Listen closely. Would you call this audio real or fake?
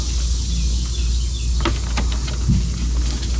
real